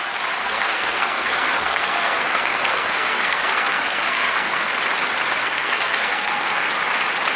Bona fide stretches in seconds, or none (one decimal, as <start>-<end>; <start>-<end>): 0.0-0.4; 4.8-5.4; 6.7-7.4